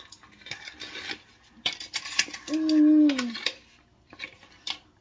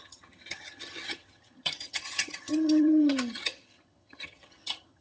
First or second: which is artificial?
second